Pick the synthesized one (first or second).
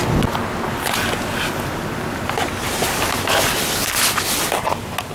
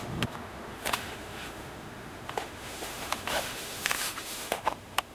second